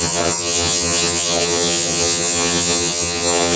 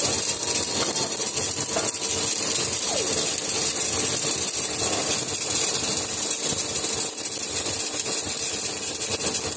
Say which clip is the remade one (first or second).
first